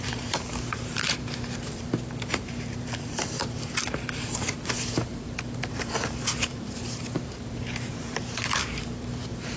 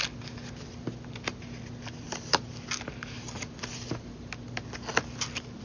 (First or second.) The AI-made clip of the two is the first